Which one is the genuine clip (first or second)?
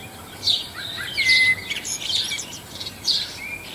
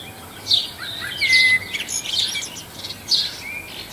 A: second